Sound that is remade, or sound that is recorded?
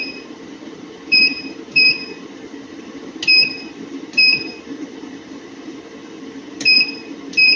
remade